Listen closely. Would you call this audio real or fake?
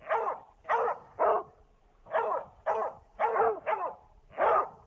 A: real